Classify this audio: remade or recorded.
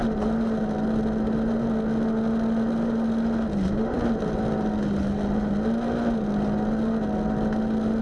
recorded